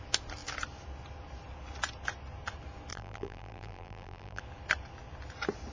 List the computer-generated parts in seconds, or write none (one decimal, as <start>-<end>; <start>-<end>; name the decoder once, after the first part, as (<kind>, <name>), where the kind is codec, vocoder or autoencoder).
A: 2.9-4.4 (vocoder, BigVGAN v2)